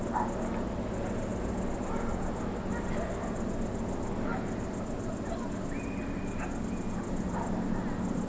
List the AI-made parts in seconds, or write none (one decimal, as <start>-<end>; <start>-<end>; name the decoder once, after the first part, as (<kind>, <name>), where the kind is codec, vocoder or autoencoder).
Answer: none